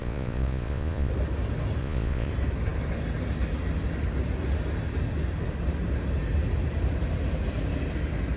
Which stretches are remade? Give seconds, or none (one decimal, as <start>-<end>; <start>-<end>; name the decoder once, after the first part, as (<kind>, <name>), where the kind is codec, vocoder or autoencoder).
0.0-1.1 (vocoder, Vocos); 1.8-2.3